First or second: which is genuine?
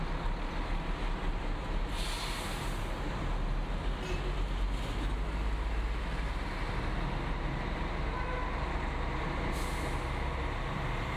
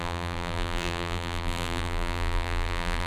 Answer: first